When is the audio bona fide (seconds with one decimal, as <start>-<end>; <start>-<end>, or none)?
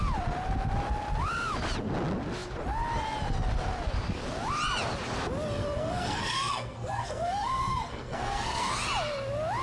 0.0-5.6; 8.7-9.6